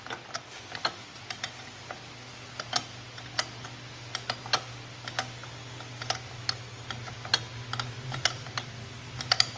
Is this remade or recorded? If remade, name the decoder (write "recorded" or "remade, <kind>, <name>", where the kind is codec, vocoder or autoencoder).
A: recorded